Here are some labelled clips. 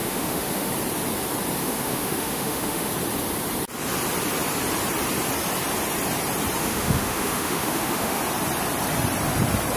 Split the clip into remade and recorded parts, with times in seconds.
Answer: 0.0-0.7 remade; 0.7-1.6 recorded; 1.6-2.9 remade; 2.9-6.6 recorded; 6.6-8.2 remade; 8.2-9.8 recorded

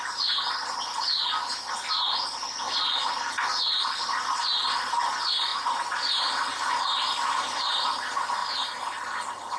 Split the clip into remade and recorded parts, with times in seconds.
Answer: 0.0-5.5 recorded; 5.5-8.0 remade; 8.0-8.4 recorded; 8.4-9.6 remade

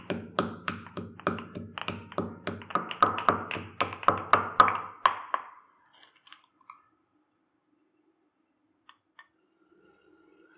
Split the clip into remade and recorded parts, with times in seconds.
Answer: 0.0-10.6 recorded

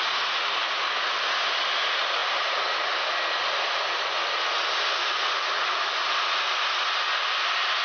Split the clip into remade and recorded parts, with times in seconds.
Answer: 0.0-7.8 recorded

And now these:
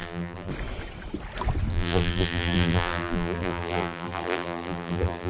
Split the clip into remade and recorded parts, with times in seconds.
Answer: 0.0-0.5 remade; 0.5-1.7 recorded; 1.7-5.3 remade

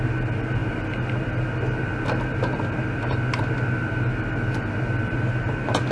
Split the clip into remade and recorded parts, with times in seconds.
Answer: 0.0-5.9 recorded

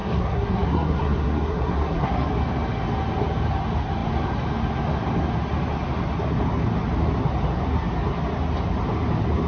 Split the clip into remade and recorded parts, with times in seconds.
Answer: 0.0-2.3 remade; 2.3-9.5 recorded

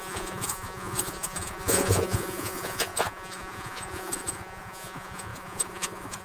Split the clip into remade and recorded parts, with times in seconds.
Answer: 0.0-6.2 remade